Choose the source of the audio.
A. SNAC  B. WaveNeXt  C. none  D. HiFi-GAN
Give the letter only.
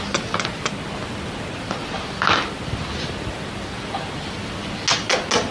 C